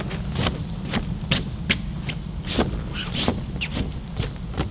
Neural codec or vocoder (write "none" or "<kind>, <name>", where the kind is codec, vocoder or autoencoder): none